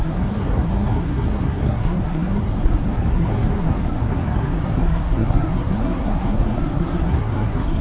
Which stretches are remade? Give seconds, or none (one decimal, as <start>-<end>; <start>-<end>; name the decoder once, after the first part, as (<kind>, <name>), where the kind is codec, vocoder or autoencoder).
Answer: 0.0-7.8 (codec, SNAC)